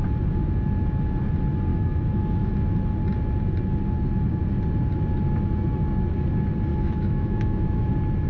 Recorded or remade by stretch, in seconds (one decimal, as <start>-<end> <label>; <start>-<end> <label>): 0.0-1.7 recorded; 1.7-2.5 remade; 2.5-6.7 recorded; 6.7-7.9 remade; 7.9-8.3 recorded